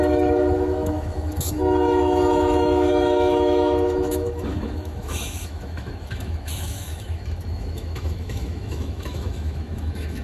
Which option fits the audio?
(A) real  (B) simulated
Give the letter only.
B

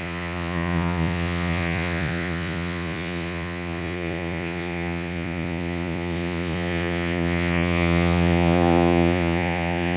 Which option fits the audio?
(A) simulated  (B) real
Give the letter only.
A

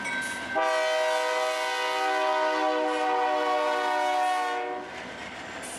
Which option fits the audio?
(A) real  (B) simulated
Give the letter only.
A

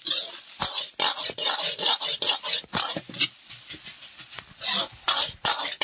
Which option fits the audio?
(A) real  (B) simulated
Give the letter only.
A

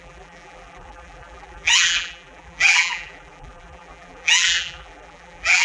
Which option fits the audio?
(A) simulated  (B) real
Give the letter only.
A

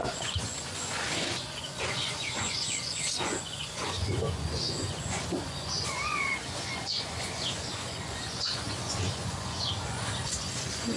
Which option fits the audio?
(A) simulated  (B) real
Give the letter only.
A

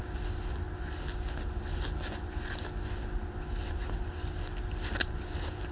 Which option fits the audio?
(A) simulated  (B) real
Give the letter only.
B